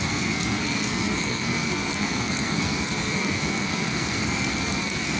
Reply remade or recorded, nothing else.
remade